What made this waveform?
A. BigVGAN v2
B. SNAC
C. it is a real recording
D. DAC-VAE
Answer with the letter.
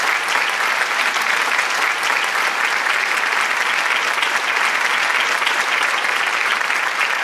C